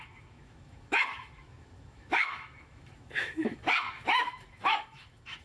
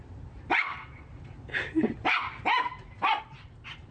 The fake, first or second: first